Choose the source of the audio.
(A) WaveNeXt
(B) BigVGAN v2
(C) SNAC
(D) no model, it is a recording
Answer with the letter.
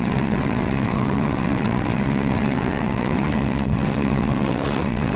A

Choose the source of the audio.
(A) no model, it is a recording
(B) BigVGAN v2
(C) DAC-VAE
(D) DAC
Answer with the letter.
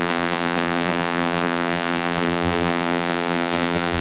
B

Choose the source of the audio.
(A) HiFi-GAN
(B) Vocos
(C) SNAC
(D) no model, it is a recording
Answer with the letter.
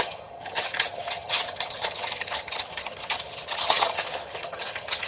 A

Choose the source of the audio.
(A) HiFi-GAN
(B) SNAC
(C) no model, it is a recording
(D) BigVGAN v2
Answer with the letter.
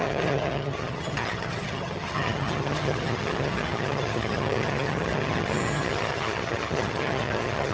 A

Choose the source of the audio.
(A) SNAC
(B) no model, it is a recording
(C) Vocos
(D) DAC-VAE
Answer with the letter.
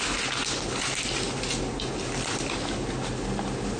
B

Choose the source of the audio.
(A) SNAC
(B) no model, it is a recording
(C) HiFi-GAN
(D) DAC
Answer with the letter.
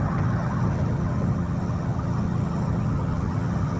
C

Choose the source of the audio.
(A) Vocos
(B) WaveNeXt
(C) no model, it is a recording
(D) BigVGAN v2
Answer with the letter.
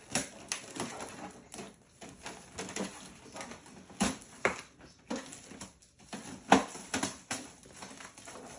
C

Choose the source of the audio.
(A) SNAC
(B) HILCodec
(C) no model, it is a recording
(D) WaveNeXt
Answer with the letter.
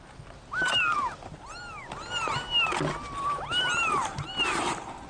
C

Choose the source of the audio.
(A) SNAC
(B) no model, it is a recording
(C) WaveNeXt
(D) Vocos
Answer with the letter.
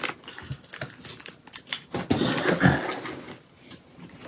B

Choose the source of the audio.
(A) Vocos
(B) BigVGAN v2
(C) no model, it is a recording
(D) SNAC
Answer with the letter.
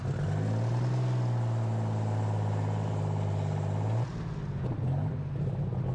C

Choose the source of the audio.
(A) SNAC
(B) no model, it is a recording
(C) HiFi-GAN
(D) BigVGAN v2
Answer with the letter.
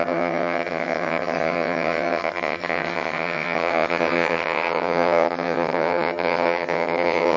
C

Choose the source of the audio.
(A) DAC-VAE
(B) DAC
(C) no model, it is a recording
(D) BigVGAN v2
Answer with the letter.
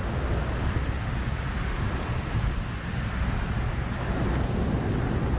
C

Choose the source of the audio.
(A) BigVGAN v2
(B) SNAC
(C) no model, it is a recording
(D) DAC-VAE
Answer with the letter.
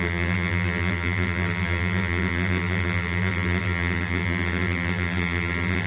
A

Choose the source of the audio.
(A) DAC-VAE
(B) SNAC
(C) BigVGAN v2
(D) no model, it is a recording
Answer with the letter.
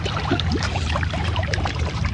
C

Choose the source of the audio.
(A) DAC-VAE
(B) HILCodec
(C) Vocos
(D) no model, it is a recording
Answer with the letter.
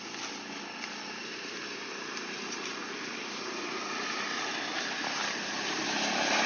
D